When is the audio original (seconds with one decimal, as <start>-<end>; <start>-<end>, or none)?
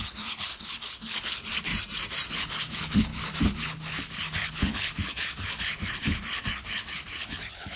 1.7-2.3